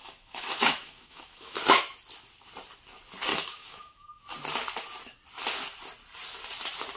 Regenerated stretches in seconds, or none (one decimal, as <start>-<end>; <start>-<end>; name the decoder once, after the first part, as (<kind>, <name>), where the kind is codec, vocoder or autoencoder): 0.0-1.8 (autoencoder, DAC-VAE); 3.3-4.2